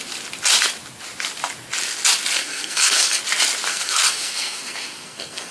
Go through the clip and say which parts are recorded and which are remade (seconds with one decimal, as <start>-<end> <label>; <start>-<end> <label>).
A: 0.0-2.4 recorded; 2.4-3.2 remade; 3.2-3.7 recorded; 3.7-5.5 remade